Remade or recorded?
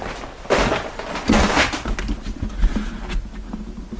recorded